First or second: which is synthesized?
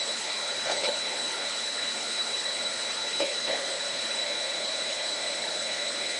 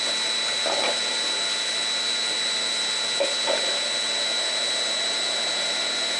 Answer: first